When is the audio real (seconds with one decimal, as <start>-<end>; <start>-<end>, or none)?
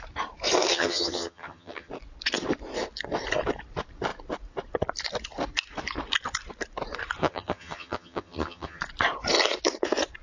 0.0-0.7; 1.9-7.2; 8.8-10.2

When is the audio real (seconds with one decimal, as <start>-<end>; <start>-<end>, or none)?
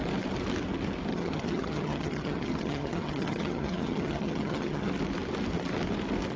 0.0-1.1; 4.9-6.4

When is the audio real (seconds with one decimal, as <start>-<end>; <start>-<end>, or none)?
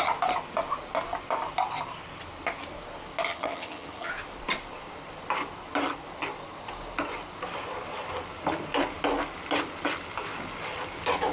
0.0-3.3; 4.1-11.3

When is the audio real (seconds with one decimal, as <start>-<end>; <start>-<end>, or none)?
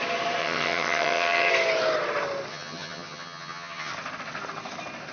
0.0-0.4; 1.5-2.5; 3.9-5.1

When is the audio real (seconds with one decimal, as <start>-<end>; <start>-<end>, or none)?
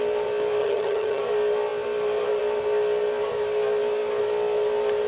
0.0-0.6; 1.2-5.1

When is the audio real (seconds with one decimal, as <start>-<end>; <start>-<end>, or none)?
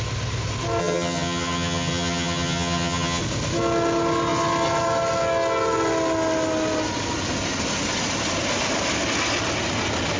0.0-0.8; 3.2-10.2